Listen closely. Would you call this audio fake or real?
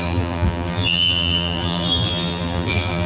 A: fake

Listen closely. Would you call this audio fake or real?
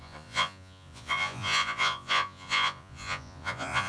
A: fake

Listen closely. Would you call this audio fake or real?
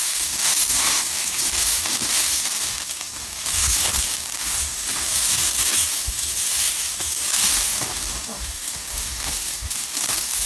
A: fake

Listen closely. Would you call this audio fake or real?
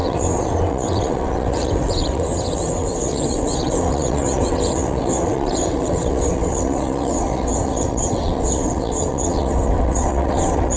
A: fake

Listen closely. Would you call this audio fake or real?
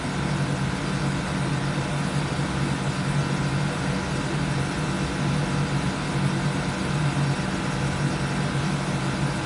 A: real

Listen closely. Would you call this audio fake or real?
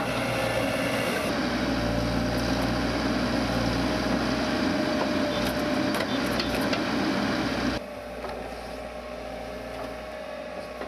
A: real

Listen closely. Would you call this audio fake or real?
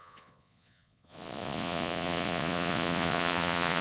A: fake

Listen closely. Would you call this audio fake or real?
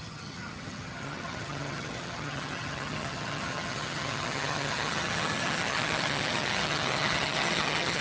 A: fake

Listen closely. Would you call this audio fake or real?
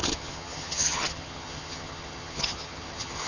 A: fake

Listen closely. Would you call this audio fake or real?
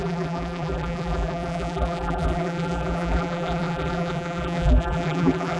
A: fake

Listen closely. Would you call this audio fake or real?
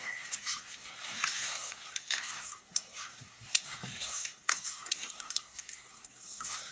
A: fake